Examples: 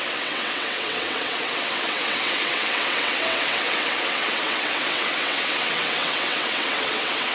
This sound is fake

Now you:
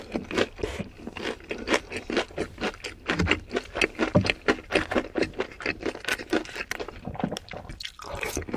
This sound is real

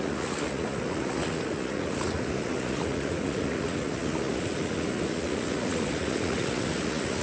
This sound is fake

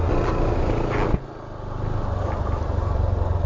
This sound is real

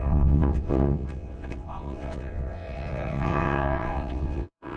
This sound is fake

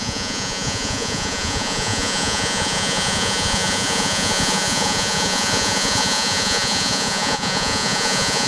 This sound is fake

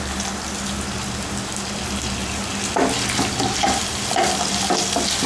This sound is real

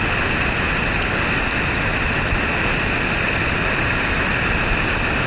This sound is real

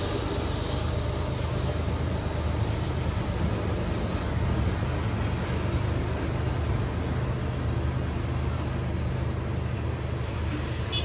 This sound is real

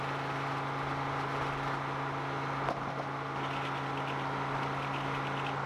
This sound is real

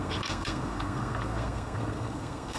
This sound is fake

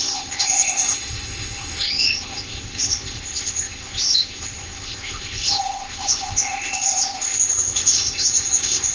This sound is fake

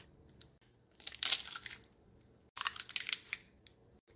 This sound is real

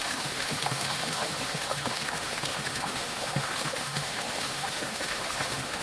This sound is fake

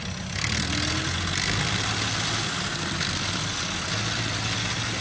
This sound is real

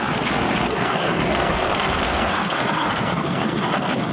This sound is fake